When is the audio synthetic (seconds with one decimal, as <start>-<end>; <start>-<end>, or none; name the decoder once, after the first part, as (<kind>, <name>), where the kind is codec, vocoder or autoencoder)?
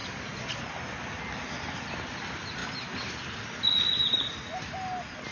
none